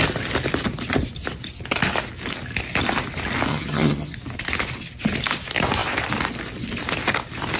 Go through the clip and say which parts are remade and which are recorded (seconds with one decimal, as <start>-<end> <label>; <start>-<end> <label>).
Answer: 0.0-3.5 recorded; 3.5-4.1 remade; 4.1-7.6 recorded